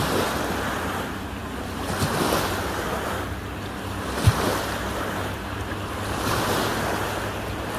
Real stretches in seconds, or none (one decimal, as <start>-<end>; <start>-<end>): 0.0-7.8